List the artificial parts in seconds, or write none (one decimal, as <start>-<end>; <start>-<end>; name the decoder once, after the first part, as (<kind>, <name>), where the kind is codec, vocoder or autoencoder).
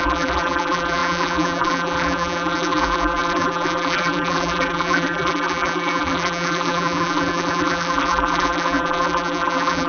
0.0-9.9 (vocoder, BigVGAN v2)